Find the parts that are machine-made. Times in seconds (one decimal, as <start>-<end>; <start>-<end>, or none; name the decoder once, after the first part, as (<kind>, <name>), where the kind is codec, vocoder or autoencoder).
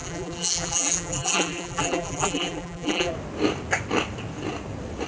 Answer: 0.0-3.1 (vocoder, BigVGAN v2)